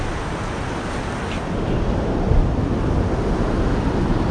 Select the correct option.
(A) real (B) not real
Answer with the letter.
A